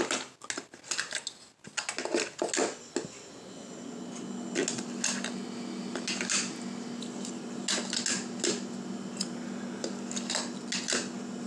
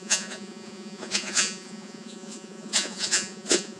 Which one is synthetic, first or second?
second